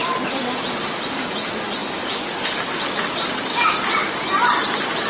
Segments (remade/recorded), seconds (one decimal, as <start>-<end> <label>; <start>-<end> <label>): 0.0-5.1 recorded